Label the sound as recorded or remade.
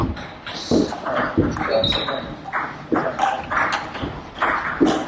recorded